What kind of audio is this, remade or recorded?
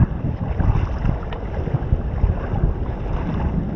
recorded